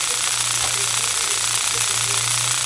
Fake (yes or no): no